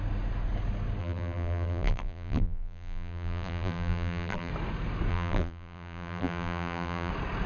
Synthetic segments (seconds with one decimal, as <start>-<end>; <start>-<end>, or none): 1.0-4.5; 5.1-7.1

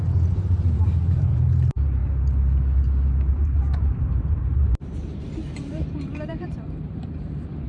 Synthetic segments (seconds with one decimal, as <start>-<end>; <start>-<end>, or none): 0.0-2.0; 3.3-7.7